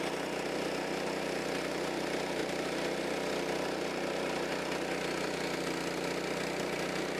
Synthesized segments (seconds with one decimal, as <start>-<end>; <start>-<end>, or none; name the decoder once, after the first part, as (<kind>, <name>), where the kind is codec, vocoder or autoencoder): none

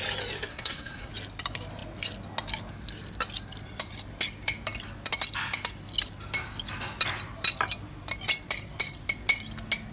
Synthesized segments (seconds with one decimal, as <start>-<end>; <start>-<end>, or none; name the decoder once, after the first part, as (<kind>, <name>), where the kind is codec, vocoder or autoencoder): 0.5-1.1 (codec, SNAC)

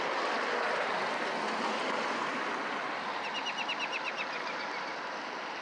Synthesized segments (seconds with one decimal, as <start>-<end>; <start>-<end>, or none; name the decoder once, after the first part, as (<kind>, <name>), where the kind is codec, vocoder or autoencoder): none

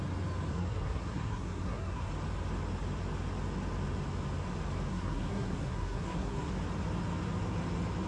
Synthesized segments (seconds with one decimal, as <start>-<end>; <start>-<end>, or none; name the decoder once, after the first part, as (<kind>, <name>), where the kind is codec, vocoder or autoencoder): 0.5-2.1 (codec, SNAC); 4.9-6.5

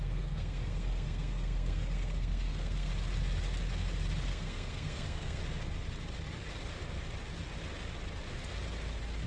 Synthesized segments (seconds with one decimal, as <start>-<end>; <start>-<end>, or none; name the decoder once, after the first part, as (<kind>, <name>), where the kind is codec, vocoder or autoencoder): 0.0-2.9 (codec, SNAC); 4.3-5.4

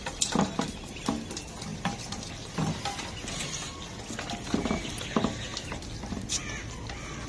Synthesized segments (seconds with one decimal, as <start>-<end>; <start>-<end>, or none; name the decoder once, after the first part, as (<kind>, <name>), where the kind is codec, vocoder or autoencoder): none

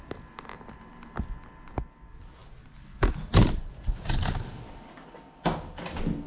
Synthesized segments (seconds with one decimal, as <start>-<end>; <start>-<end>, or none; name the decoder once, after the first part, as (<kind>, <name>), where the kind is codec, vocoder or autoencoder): none